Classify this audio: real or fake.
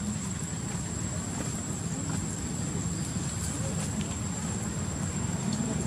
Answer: fake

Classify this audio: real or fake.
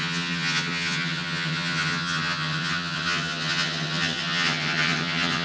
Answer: fake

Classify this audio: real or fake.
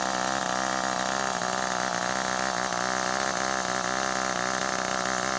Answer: real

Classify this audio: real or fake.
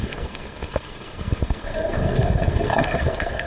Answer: fake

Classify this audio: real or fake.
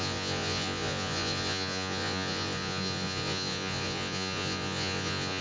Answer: fake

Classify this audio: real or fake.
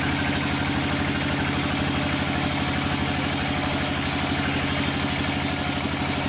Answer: real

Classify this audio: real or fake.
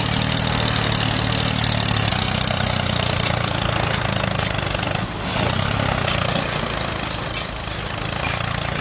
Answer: real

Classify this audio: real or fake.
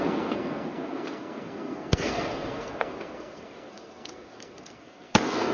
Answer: fake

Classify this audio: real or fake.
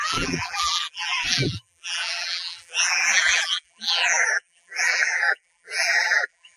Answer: fake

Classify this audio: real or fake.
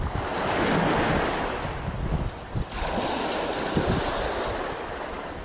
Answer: real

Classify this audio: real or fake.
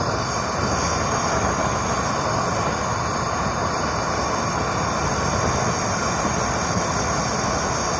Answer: real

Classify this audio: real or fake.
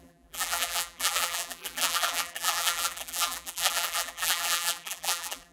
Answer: fake